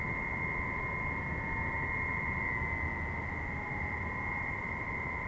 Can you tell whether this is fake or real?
real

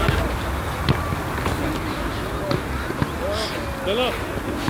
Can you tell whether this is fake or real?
real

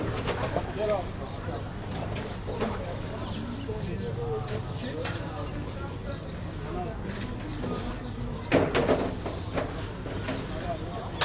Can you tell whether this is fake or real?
real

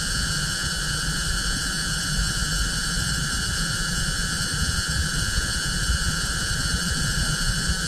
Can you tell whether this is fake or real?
fake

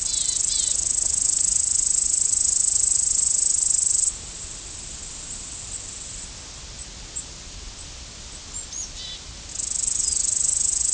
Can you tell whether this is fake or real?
real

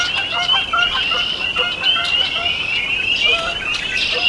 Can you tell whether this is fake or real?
real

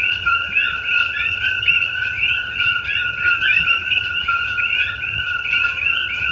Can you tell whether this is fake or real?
fake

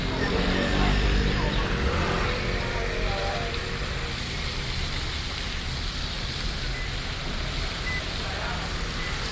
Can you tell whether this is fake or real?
real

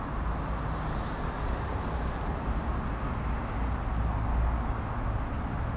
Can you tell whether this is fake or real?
real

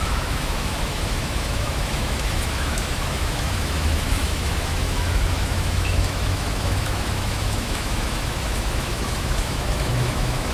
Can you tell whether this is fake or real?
fake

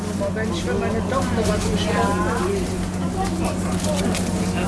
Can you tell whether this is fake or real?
real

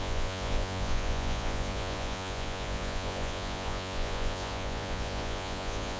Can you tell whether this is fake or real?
fake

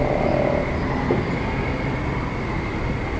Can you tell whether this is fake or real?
real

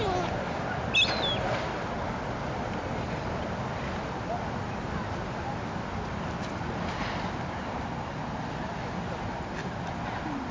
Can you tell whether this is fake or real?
real